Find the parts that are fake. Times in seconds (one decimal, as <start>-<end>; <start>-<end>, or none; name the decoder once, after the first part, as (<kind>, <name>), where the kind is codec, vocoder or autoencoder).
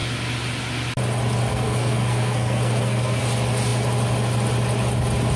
1.5-3.2 (codec, SNAC)